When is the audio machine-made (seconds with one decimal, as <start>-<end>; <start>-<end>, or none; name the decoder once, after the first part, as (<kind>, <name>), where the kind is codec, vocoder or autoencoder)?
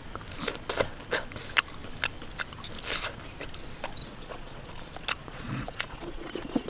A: 4.0-4.7 (vocoder, Vocos); 5.2-6.7